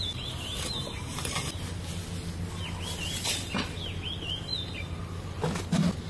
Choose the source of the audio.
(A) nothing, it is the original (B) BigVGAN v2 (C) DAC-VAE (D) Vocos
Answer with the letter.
A